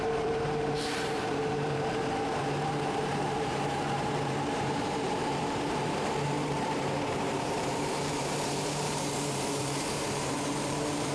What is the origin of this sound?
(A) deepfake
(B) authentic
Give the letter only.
A